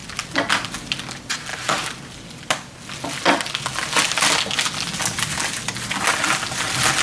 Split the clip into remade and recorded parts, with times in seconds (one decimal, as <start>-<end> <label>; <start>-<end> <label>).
0.0-7.0 recorded